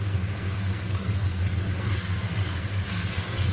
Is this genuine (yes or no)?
no